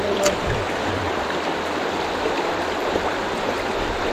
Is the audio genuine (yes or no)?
no